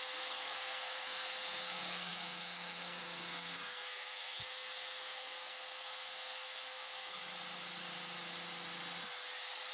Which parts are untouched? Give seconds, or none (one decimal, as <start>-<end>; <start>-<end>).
7.2-9.7